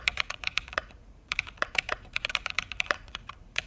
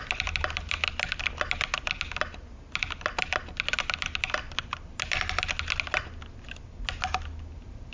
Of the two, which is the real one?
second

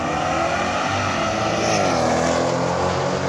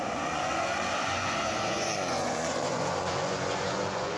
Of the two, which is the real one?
first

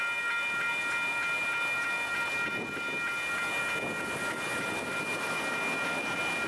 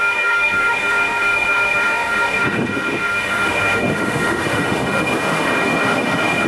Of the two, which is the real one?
first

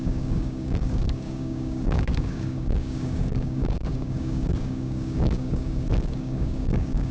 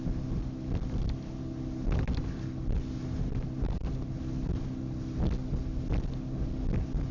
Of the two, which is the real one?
second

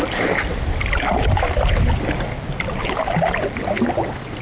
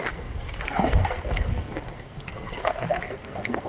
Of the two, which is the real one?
first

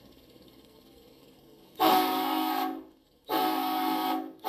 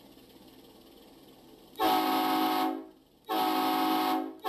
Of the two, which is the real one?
second